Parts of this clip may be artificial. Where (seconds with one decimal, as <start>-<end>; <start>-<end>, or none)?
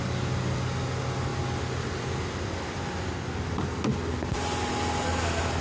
none